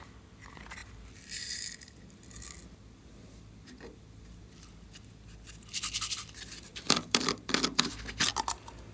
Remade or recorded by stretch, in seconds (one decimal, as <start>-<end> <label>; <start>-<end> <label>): 0.0-8.9 recorded